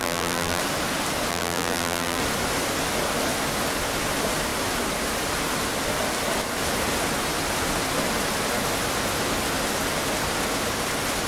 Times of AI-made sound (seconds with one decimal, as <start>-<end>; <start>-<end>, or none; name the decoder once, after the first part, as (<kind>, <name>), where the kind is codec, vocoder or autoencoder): 0.0-0.6 (vocoder, BigVGAN v2); 1.3-2.2